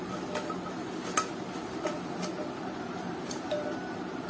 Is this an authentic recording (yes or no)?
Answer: yes